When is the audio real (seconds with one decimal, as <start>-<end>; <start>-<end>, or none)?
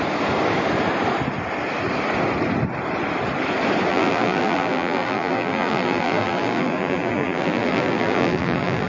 0.0-3.9